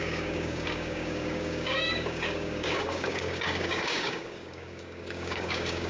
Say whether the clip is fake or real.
fake